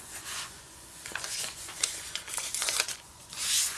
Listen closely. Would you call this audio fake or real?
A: fake